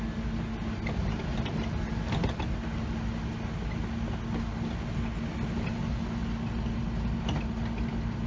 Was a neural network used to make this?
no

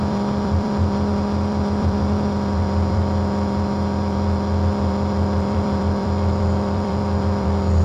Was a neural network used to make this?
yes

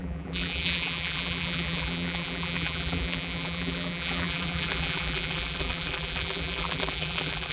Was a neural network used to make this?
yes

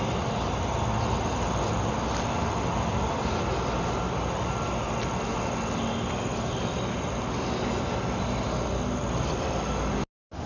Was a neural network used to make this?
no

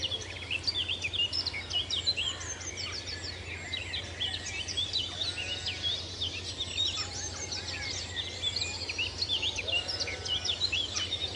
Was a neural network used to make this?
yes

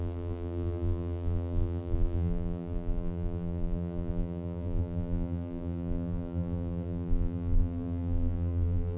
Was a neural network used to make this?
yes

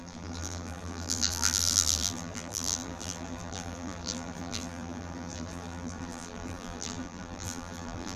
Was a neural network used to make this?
yes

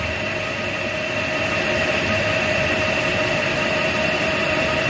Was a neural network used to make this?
no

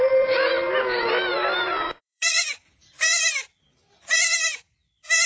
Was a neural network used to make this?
yes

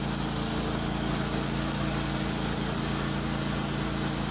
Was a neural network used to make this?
no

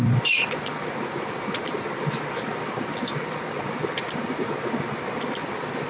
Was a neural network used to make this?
yes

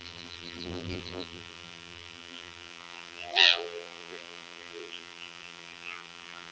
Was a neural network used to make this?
yes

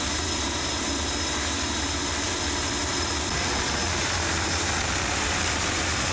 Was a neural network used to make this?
no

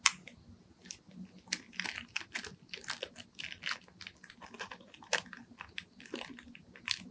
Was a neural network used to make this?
no